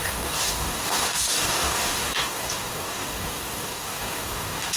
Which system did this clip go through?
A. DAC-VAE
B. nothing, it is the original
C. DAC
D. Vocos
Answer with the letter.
C